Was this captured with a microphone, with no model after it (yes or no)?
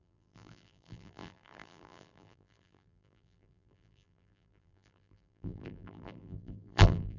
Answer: no